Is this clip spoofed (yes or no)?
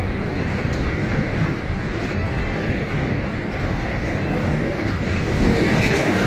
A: yes